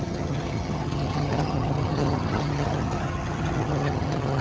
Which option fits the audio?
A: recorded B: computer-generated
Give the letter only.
B